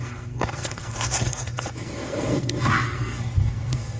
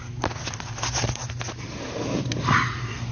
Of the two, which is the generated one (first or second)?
first